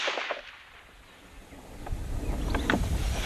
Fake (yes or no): no